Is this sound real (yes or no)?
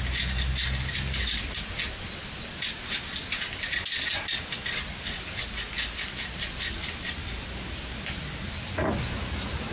yes